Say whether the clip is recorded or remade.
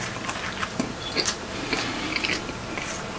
recorded